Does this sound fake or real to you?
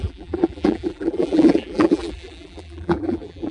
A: fake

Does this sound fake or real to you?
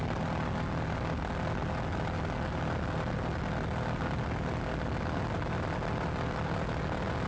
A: real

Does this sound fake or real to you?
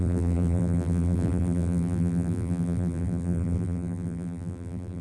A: fake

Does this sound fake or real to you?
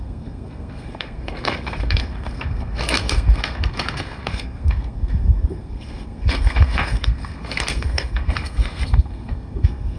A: fake